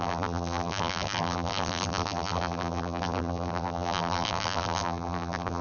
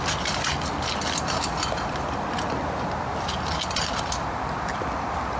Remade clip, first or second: first